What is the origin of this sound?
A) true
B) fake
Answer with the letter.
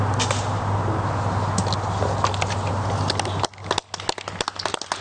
A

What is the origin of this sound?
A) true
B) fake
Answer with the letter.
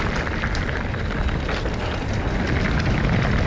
A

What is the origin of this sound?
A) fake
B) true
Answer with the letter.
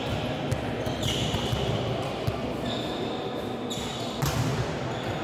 B